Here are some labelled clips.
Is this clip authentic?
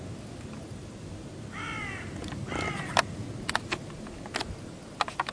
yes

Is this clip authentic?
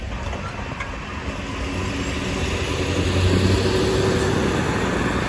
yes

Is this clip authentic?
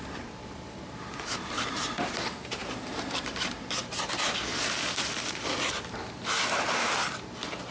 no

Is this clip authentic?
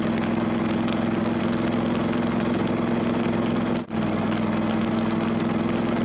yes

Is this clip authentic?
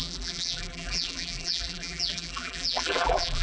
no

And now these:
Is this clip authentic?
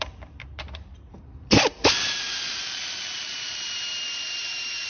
no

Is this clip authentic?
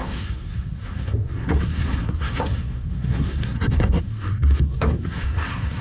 no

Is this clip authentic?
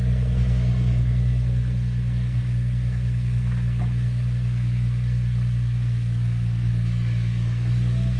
no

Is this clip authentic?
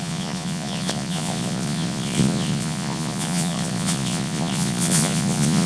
no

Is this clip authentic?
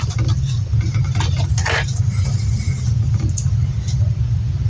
yes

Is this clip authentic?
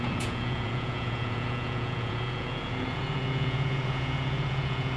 no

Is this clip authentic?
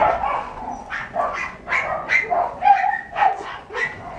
no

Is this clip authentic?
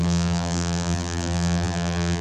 no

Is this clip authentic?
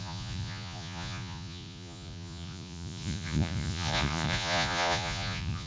no